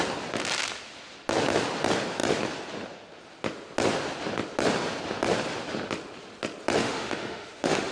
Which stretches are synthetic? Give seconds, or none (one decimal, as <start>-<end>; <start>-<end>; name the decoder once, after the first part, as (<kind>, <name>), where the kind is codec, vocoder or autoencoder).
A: 6.8-7.9 (autoencoder, DAC-VAE)

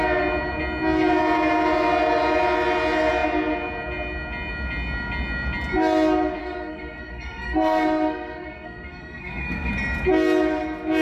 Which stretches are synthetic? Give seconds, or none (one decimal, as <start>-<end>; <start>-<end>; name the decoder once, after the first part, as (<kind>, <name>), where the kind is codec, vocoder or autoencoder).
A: 6.4-9.7 (codec, SNAC)

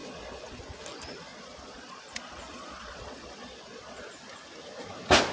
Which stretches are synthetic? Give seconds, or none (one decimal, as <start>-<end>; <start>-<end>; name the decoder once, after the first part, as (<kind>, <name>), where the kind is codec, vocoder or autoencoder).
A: 0.0-0.6 (vocoder, Vocos); 1.3-4.0

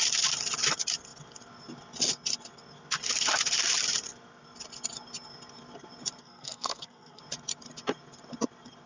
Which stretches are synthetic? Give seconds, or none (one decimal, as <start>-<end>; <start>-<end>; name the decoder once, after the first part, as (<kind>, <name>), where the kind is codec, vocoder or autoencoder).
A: 6.2-7.2 (codec, SNAC)

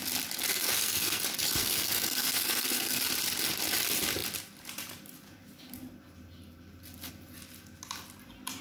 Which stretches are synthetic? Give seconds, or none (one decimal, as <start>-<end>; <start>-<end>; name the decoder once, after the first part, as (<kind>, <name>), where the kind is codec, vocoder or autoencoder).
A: 0.5-1.2 (codec, SNAC); 1.6-3.0